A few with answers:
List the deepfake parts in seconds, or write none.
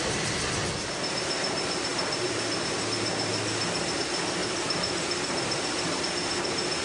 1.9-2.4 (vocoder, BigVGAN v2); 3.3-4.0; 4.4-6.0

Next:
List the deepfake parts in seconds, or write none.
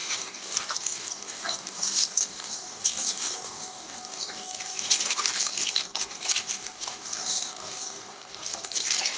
0.0-9.2 (codec, DAC)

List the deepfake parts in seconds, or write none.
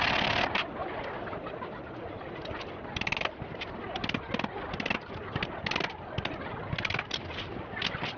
none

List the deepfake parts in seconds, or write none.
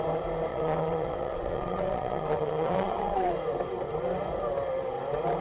0.5-3.3 (vocoder, WaveNeXt)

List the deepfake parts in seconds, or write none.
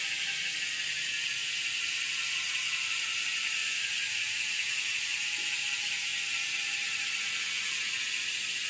2.5-3.2 (vocoder, BigVGAN v2); 3.6-4.9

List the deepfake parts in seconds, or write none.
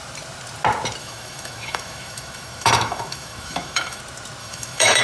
1.0-4.0 (autoencoder, DAC-VAE); 4.4-5.0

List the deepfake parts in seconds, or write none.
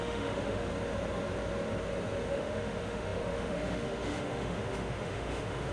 0.0-0.7 (autoencoder, DAC-VAE); 2.3-5.7